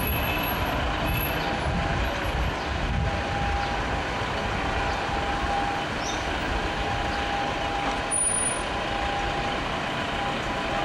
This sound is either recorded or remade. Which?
recorded